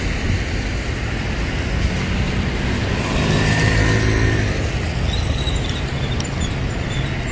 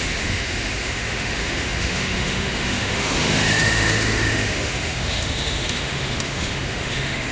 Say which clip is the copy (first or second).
second